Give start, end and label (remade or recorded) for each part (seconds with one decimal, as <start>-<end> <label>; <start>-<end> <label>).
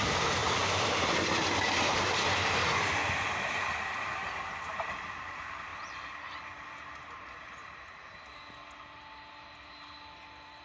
0.0-10.6 recorded